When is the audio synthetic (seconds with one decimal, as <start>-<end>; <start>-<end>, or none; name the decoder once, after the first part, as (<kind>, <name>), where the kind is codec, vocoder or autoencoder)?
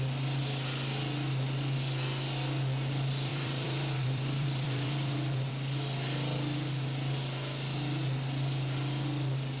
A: 3.3-5.5 (vocoder, BigVGAN v2)